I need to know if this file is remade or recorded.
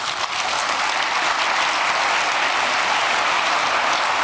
recorded